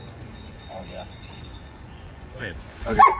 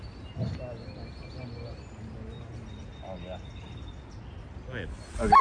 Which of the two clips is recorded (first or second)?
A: second